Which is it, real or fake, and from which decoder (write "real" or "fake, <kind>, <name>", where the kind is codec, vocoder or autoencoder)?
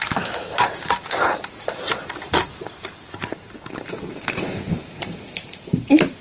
fake, vocoder, BigVGAN v2